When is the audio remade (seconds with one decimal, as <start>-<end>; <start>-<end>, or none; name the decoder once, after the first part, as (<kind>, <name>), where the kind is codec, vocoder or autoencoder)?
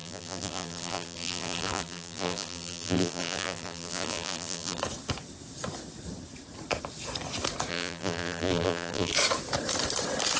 0.0-4.8 (vocoder, BigVGAN v2); 7.7-9.1